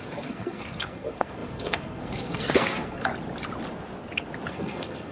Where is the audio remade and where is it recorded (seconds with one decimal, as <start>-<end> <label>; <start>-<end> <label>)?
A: 0.0-3.1 remade; 3.1-4.5 recorded; 4.5-5.1 remade

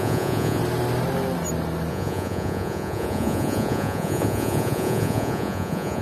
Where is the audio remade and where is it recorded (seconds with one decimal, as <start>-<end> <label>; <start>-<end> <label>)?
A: 0.0-0.6 remade; 0.6-1.9 recorded; 1.9-6.0 remade

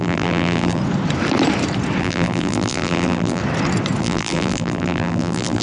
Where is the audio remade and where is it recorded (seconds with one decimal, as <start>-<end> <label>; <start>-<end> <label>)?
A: 0.0-0.8 remade; 0.8-2.0 recorded; 2.0-3.4 remade; 3.4-4.0 recorded; 4.0-5.6 remade

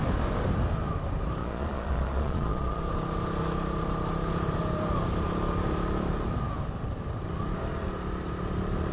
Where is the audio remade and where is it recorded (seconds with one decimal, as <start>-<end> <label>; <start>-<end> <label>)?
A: 0.0-1.4 recorded; 1.4-2.8 remade; 2.8-8.9 recorded

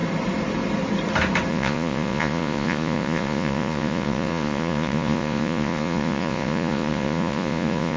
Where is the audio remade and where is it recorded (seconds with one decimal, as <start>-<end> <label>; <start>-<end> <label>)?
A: 0.0-1.5 recorded; 1.5-8.0 remade

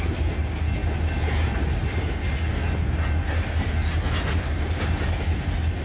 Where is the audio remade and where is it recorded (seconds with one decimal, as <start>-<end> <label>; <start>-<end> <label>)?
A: 0.0-5.8 recorded